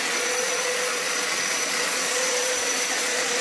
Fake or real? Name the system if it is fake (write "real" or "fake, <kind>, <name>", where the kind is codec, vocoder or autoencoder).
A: fake, vocoder, Vocos